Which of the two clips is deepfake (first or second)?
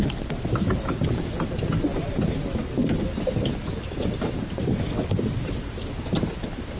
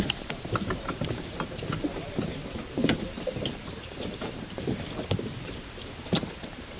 second